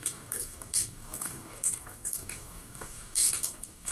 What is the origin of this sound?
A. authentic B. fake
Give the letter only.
B